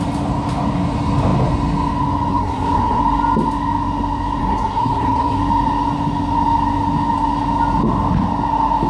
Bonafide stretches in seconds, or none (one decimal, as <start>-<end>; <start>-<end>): 0.0-2.3; 3.0-4.4; 5.4-8.9